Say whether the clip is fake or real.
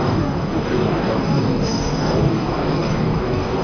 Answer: fake